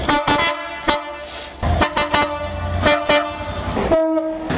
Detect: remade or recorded recorded